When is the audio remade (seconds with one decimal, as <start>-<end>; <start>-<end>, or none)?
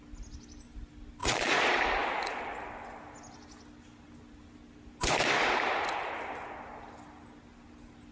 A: 1.2-2.4